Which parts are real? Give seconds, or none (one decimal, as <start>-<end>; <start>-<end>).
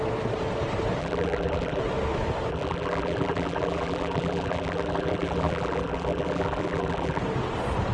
0.0-1.0; 1.8-2.5; 7.2-7.9